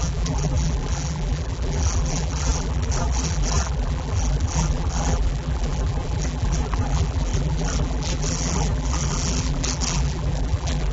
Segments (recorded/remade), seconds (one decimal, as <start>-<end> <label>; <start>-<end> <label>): 0.0-10.9 remade